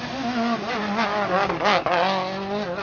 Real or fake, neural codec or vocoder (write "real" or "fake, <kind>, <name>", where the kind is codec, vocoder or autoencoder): real